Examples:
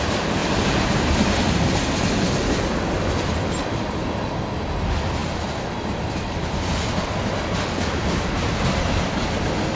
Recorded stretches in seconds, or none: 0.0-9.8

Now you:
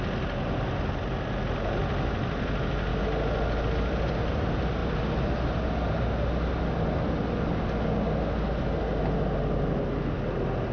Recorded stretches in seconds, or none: 0.0-10.7

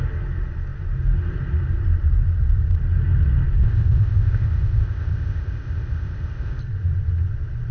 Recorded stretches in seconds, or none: 0.0-3.6; 6.6-7.7